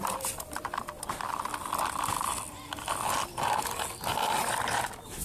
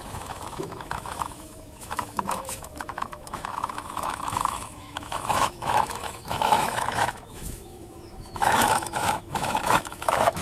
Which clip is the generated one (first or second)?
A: second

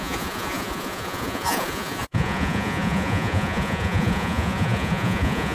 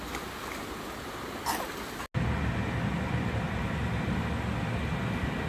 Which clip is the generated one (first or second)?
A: first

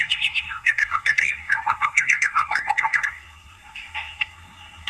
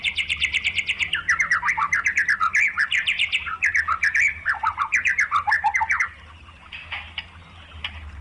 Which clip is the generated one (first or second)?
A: first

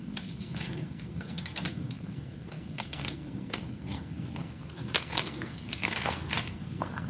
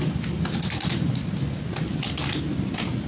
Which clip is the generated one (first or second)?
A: first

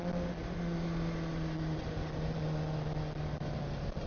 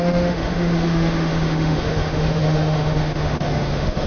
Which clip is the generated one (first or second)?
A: second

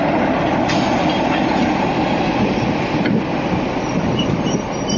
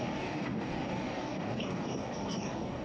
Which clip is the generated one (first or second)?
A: second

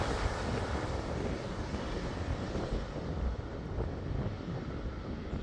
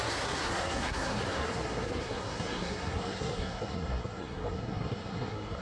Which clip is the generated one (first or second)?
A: second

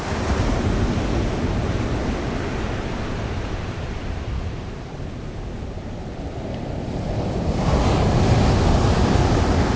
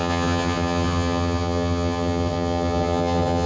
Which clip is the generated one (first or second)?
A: second